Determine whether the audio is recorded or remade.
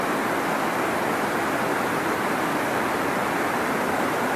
recorded